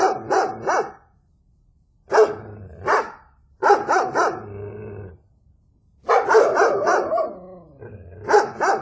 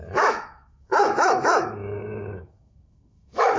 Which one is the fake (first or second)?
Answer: second